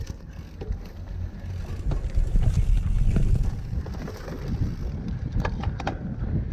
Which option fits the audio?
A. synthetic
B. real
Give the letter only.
B